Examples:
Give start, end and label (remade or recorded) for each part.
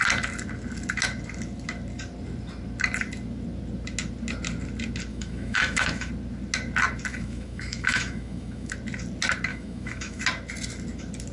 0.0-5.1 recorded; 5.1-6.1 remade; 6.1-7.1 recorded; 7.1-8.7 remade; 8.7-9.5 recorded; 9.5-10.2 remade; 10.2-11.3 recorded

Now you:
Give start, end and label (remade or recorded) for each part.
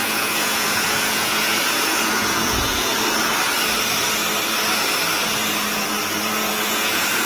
0.0-2.9 remade; 2.9-6.4 recorded; 6.4-7.3 remade